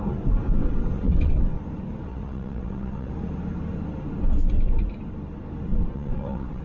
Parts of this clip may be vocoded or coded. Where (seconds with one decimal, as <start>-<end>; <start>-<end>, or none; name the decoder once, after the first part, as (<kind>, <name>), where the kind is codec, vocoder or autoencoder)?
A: 0.6-1.6 (vocoder, WaveNeXt); 2.1-3.1; 5.7-6.6